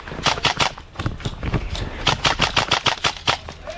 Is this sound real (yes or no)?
yes